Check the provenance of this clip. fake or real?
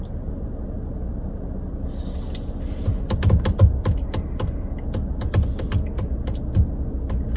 real